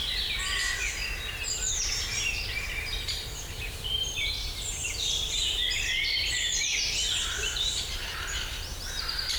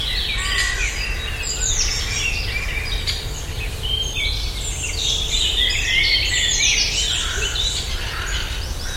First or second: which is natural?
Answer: second